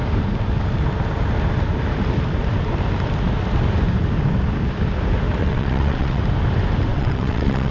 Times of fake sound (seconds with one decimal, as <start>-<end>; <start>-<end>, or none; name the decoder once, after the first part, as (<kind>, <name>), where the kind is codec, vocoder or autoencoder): 5.4-6.2 (vocoder, WaveNeXt); 6.9-7.7